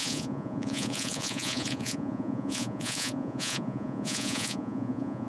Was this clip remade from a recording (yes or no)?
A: yes